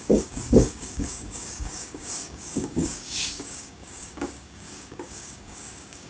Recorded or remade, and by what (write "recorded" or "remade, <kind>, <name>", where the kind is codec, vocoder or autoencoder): remade, codec, DAC